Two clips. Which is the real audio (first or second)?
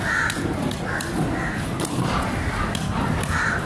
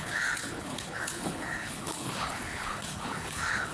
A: first